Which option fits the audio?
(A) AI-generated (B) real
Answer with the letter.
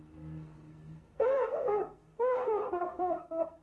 A